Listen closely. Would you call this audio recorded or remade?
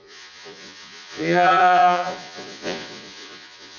remade